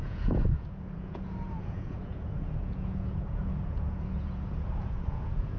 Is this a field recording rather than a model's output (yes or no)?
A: no